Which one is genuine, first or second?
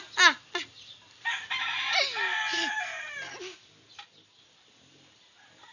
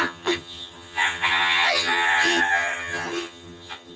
first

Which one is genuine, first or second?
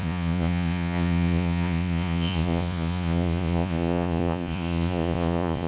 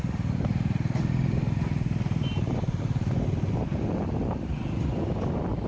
second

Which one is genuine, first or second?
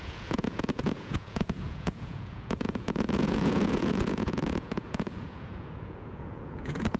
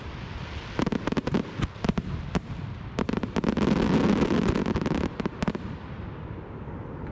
second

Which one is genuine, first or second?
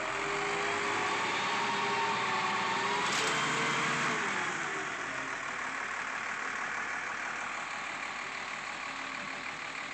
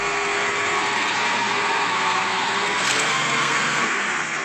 first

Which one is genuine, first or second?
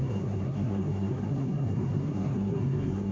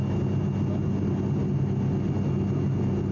second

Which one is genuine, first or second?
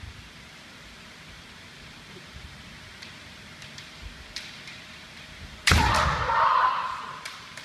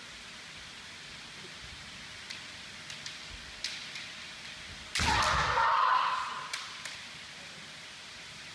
second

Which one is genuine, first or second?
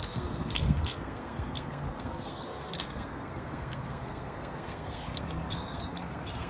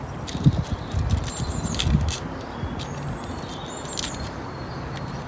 second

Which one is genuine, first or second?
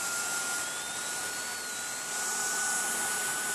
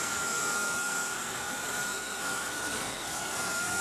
first